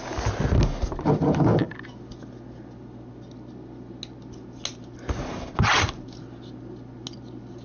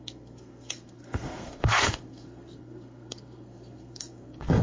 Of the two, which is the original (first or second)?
first